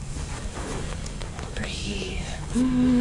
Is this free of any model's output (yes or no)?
no